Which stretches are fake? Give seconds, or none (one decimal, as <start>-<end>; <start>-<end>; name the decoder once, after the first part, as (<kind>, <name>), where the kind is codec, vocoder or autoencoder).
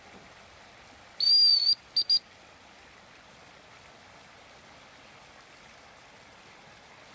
none